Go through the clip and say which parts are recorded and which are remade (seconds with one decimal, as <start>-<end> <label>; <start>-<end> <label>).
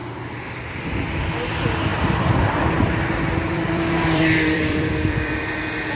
0.0-1.9 recorded; 1.9-5.4 remade; 5.4-5.9 recorded